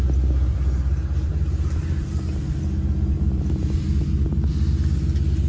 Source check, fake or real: real